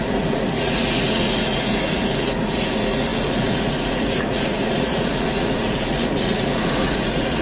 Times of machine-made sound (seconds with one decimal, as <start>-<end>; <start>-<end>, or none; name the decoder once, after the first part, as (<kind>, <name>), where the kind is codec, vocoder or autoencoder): 0.0-7.4 (vocoder, Vocos)